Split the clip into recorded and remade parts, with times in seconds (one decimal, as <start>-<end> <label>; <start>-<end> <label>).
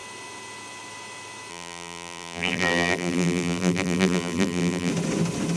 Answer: 0.0-1.5 recorded; 1.5-4.9 remade; 4.9-5.6 recorded